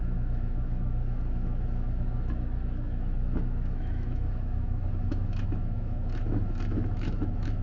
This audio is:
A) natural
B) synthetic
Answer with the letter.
B